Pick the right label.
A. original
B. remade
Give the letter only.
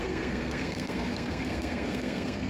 B